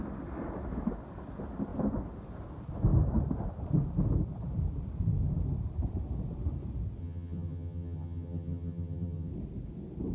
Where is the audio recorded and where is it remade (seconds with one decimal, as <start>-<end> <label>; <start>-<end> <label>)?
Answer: 0.0-7.0 recorded; 7.0-9.3 remade; 9.3-10.1 recorded